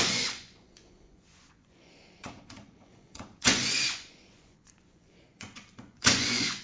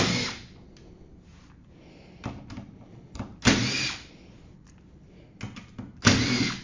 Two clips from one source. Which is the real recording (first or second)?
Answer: second